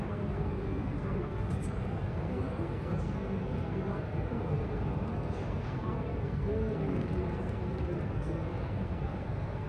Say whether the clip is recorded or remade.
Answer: remade